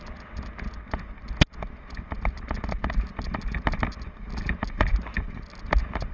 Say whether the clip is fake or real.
real